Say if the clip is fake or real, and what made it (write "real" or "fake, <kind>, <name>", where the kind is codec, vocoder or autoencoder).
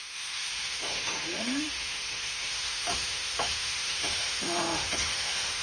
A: fake, autoencoder, DAC-VAE